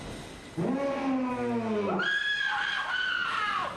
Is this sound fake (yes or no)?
no